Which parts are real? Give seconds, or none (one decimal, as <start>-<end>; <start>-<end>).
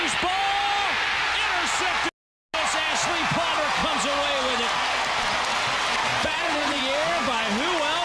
0.0-6.1; 6.8-8.0